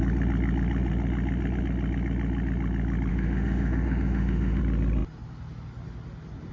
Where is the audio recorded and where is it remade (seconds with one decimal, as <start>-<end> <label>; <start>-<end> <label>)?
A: 0.0-3.1 recorded; 3.1-4.6 remade; 4.6-6.5 recorded